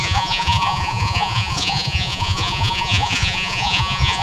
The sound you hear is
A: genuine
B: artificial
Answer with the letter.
B